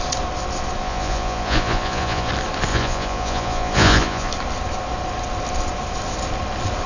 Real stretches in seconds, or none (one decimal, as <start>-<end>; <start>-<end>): 0.0-0.8; 2.3-2.7; 4.3-6.9